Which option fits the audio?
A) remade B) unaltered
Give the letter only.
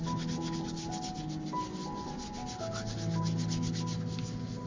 B